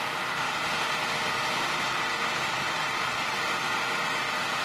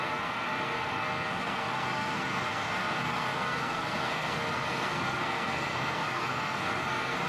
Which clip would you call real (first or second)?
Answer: first